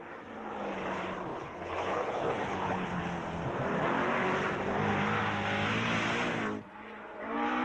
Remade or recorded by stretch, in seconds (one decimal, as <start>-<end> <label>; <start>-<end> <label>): 0.0-1.3 recorded; 1.3-3.0 remade; 3.0-7.6 recorded